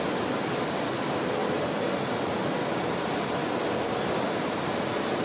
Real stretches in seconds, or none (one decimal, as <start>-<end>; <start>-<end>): 0.0-5.2